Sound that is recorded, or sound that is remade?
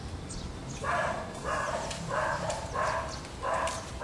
recorded